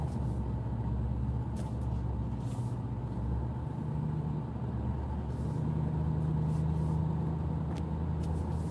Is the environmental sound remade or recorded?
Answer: recorded